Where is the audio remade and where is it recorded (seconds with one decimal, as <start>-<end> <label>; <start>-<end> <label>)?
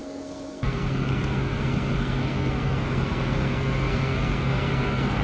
0.0-5.2 remade